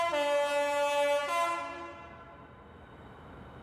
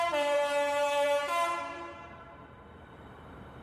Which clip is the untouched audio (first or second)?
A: first